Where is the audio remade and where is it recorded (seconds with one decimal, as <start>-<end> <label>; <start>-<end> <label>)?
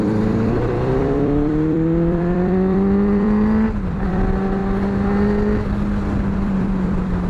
0.0-4.6 remade; 4.6-6.2 recorded; 6.2-7.3 remade